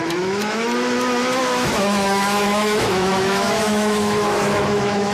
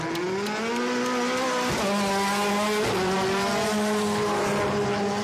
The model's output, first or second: first